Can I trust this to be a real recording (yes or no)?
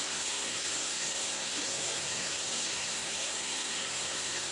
no